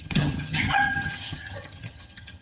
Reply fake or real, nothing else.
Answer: fake